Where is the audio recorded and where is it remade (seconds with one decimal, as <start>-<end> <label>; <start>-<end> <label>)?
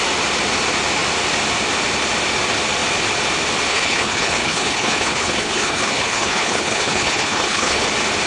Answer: 0.0-3.7 recorded; 3.7-7.9 remade; 7.9-8.3 recorded